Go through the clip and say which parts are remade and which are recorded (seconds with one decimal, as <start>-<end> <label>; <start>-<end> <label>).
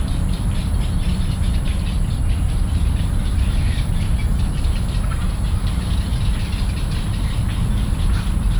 0.0-1.7 remade; 1.7-2.4 recorded; 2.4-4.2 remade; 4.2-5.3 recorded; 5.3-6.1 remade; 6.1-7.1 recorded; 7.1-8.6 remade